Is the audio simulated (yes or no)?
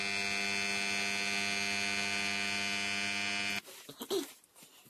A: no